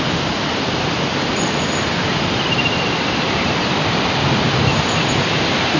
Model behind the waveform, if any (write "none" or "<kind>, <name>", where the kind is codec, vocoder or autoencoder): vocoder, BigVGAN v2